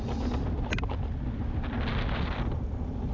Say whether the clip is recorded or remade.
recorded